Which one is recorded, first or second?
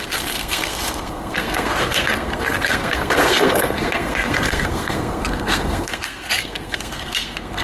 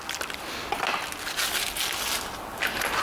second